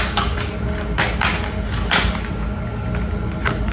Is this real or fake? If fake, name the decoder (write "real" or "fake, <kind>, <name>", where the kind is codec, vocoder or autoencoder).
real